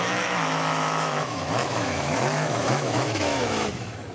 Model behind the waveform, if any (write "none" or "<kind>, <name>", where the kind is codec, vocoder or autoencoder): autoencoder, DAC-VAE